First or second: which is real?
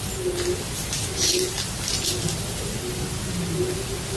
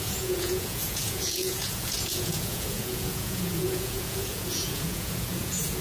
first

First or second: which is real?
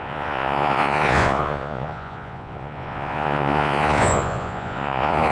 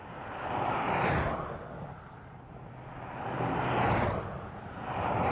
second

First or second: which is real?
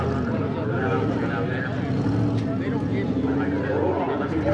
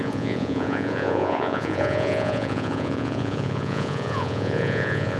first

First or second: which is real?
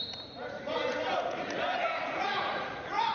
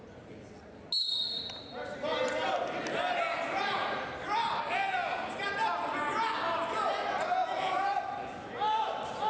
second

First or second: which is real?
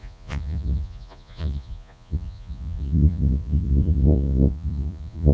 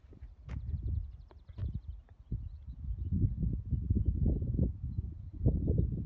second